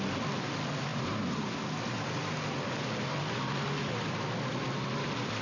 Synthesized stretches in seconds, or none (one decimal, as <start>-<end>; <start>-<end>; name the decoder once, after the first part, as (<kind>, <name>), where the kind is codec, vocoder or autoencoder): none